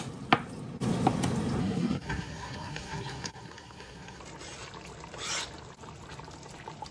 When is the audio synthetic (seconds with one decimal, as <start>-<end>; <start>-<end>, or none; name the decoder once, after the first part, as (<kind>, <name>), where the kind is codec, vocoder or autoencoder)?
1.6-4.2 (codec, SNAC)